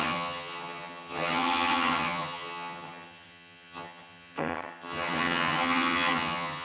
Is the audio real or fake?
fake